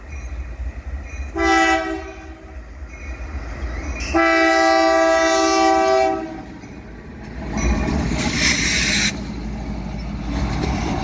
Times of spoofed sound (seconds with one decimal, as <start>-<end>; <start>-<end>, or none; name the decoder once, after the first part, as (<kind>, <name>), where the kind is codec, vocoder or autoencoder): none